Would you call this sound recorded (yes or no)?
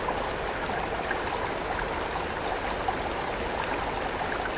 yes